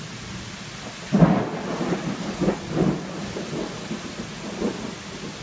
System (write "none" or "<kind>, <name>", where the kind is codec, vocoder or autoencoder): none